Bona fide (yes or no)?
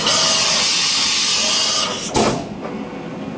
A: yes